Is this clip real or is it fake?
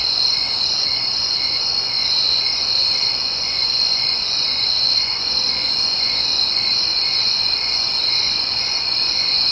fake